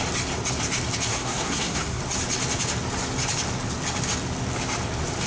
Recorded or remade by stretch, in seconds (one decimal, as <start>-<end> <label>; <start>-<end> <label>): 0.0-1.1 recorded; 1.1-2.0 remade; 2.0-5.3 recorded